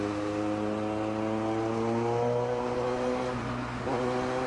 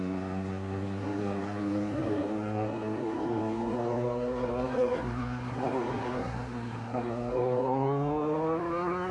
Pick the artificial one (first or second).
second